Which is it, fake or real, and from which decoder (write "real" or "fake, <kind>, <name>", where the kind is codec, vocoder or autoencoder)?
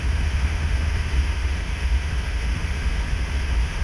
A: fake, autoencoder, DAC-VAE